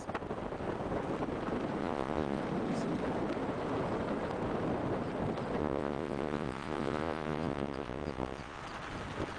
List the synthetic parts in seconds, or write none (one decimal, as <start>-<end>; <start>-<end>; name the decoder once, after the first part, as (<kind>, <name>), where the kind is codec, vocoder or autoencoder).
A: 1.8-2.4 (vocoder, Vocos); 5.6-8.6